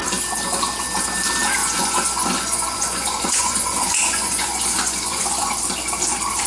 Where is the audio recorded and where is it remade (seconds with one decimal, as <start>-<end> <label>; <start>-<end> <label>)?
0.0-1.6 recorded; 1.6-5.5 remade; 5.5-6.5 recorded